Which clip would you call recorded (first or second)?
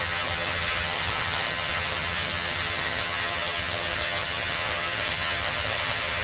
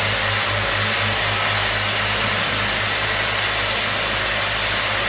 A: second